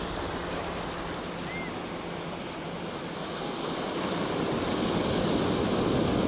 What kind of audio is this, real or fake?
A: real